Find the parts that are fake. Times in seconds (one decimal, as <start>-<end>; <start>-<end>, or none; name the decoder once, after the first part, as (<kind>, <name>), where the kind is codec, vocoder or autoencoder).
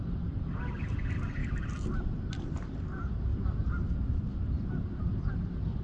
1.4-2.3 (vocoder, BigVGAN v2); 3.3-5.8